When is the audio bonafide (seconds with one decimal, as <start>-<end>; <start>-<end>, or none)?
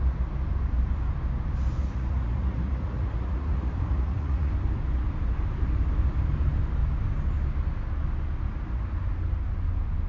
0.0-1.8; 4.5-10.1